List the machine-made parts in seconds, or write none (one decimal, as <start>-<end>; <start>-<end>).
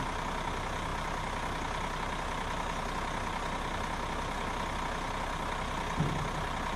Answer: none